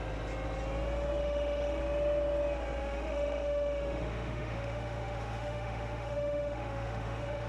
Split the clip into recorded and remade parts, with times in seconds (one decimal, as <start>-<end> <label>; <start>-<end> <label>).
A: 0.0-1.2 recorded; 1.2-1.8 remade; 1.8-2.8 recorded; 2.8-7.5 remade